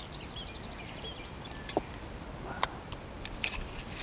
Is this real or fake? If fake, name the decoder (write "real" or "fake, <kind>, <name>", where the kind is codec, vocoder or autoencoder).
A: real